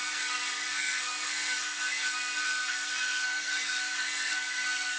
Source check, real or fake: fake